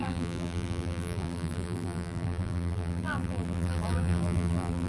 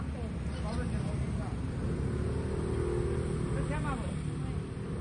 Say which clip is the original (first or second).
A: second